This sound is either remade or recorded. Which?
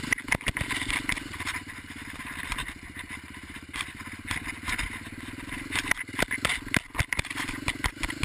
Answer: recorded